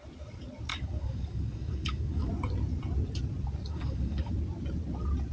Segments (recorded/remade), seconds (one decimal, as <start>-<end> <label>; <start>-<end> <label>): 0.0-0.7 recorded; 0.7-2.3 remade; 2.3-3.7 recorded; 3.7-4.3 remade; 4.3-5.3 recorded